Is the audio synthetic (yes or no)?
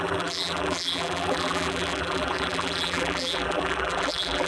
yes